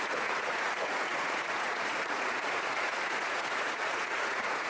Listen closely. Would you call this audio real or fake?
fake